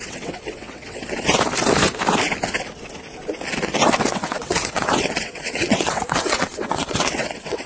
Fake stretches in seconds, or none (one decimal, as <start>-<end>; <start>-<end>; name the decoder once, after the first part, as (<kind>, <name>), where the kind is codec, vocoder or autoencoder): 0.0-1.3 (vocoder, WaveNeXt); 3.6-7.7

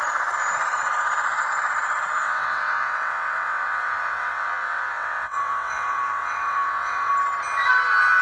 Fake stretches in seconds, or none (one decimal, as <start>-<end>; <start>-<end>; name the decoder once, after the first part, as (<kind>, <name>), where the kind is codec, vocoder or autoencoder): 2.2-7.1 (vocoder, WaveNeXt)

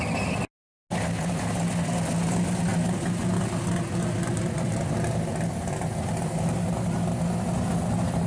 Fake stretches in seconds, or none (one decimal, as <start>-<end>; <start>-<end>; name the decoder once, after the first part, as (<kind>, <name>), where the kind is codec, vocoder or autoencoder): none

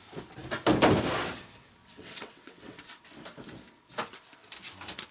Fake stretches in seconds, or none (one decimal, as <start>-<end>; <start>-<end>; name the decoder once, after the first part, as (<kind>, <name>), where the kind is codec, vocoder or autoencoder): 1.8-2.9 (vocoder, WaveNeXt)

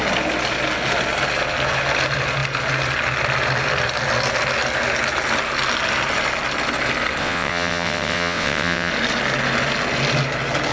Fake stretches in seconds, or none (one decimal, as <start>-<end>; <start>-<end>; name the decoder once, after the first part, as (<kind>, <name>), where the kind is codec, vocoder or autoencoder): 7.2-8.9 (vocoder, WaveNeXt)

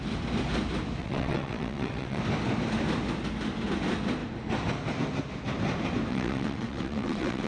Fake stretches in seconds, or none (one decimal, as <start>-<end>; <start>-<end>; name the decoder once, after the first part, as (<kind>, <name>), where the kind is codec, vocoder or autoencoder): 1.0-2.2 (vocoder, WaveNeXt); 6.1-7.5

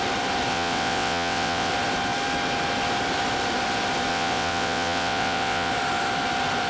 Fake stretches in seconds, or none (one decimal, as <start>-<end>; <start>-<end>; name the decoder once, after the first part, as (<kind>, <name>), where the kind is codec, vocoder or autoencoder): 0.5-1.7 (vocoder, WaveNeXt); 4.1-5.7